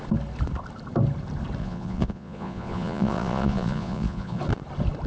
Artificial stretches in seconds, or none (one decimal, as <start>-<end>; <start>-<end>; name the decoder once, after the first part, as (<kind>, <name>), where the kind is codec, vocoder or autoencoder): 1.6-4.4 (vocoder, Vocos)